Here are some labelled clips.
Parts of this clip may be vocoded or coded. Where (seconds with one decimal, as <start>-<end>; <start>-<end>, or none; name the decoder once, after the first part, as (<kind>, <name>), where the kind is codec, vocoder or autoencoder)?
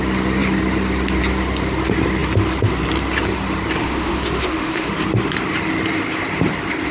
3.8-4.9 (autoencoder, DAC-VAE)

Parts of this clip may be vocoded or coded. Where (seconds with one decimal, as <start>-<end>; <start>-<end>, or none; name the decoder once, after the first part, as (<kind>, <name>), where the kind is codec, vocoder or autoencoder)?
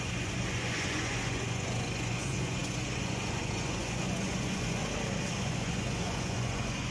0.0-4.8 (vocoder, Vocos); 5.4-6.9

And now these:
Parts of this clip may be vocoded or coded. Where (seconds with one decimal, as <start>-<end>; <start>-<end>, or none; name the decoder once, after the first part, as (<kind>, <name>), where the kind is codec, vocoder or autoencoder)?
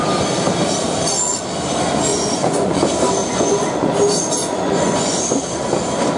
2.1-2.8 (vocoder, Vocos); 3.2-3.9; 4.4-5.2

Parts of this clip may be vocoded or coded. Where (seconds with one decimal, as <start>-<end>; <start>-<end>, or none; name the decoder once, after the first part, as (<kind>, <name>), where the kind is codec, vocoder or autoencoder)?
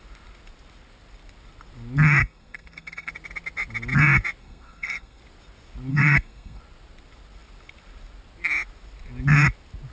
2.2-3.1 (codec, SNAC); 4.4-5.2; 5.9-6.6